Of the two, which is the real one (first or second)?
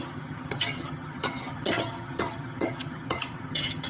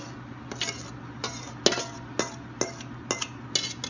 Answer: second